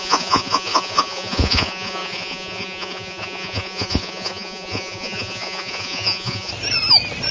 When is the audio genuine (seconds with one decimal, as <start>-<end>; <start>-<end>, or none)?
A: 6.5-7.3